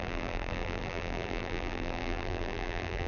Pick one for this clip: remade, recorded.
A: remade